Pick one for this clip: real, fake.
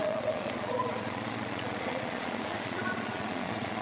fake